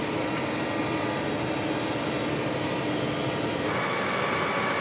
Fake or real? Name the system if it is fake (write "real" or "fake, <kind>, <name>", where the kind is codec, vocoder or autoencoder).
real